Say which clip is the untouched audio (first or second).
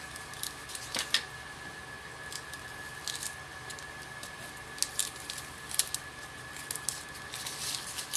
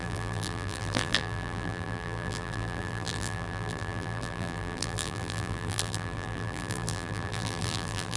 first